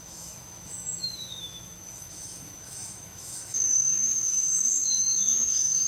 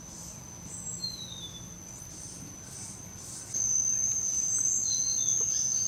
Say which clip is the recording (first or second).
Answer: second